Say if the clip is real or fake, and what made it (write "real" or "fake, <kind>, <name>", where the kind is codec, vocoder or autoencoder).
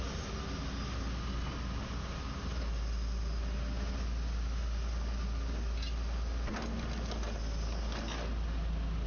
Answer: real